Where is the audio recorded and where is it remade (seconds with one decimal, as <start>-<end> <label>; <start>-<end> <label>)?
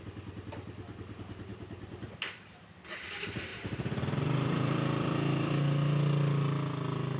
0.0-1.5 recorded; 1.5-2.6 remade; 2.6-3.5 recorded; 3.5-5.5 remade; 5.5-7.2 recorded